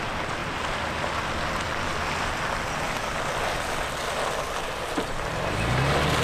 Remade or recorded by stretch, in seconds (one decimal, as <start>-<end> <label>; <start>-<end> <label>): 0.0-0.4 recorded; 0.4-0.9 remade; 0.9-6.2 recorded